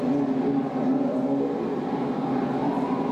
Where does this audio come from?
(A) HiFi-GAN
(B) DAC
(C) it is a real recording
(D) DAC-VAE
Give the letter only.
C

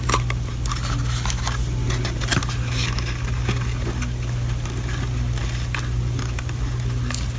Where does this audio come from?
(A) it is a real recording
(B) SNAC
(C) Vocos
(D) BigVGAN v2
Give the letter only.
A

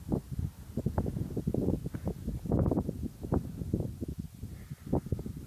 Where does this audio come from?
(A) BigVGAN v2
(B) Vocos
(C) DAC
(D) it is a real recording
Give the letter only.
D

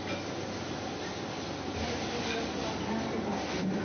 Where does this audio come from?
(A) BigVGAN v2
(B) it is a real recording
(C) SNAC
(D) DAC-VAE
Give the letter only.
B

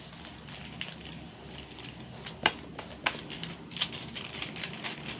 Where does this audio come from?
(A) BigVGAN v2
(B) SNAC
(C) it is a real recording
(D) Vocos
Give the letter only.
C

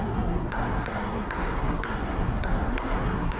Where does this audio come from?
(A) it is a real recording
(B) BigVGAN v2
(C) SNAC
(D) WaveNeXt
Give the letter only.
C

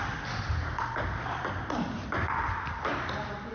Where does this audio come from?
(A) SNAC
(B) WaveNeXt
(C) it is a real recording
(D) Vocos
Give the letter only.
C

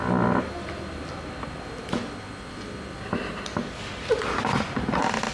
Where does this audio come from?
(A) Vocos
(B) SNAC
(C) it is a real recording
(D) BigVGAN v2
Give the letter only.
C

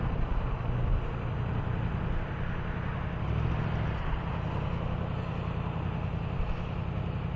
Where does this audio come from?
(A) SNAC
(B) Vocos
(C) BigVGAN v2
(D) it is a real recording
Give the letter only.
D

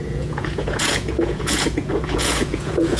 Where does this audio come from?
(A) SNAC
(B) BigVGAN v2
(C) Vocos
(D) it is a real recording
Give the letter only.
C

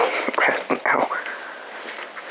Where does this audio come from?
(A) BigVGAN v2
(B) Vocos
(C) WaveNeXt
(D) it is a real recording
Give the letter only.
D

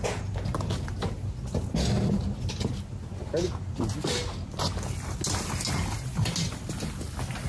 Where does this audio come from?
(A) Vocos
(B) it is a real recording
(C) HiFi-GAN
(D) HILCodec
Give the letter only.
B